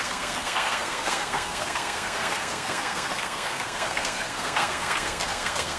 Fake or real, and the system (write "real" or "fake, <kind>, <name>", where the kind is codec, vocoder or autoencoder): fake, codec, SNAC